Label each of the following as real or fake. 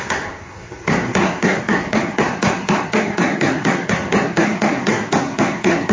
fake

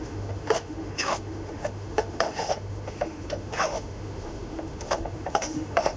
fake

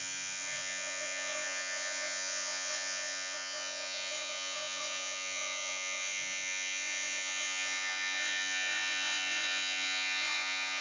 fake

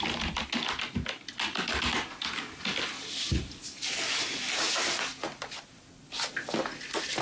real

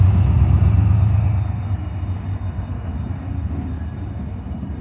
real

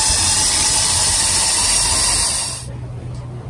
real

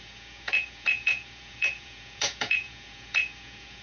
fake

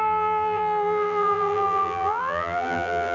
fake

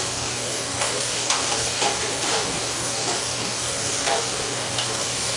fake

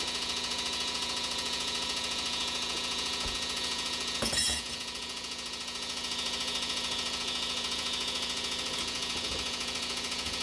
fake